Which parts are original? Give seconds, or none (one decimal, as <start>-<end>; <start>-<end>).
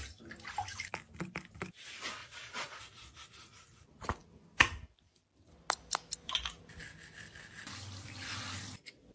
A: 0.0-2.2; 2.8-9.1